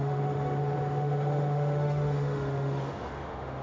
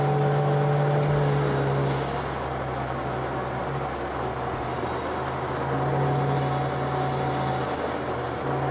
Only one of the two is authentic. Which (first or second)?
second